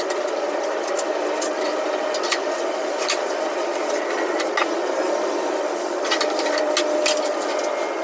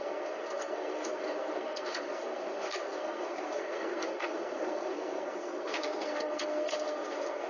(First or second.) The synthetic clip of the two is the second